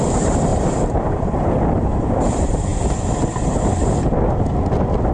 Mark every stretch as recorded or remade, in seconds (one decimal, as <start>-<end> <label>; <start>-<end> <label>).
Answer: 0.0-0.5 remade; 0.5-1.2 recorded; 1.2-2.7 remade; 2.7-5.1 recorded